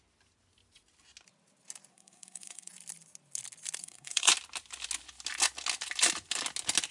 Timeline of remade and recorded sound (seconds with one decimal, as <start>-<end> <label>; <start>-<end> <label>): 0.0-1.9 recorded; 1.9-2.7 remade; 2.7-3.8 recorded; 3.8-4.3 remade; 4.3-6.9 recorded